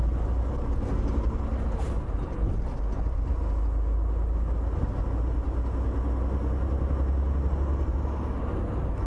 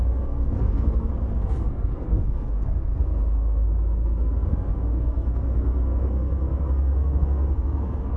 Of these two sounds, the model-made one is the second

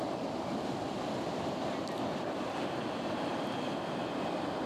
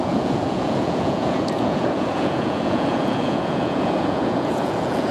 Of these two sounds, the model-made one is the second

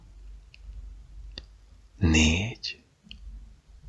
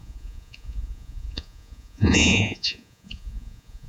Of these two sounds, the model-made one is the second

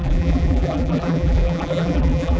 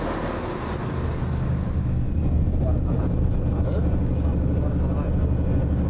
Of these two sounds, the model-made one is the first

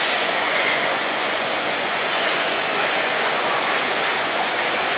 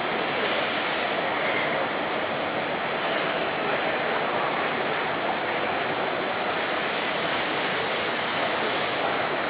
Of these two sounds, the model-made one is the first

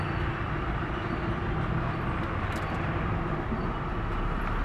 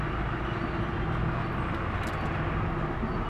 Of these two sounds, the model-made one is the first